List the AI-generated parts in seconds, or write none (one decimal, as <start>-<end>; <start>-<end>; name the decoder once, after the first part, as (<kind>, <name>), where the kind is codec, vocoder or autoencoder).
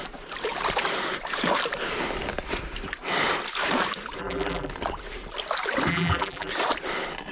4.2-4.7 (vocoder, BigVGAN v2); 5.9-6.5